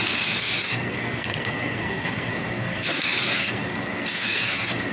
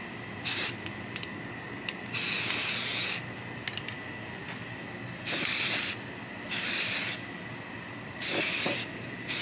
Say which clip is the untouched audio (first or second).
second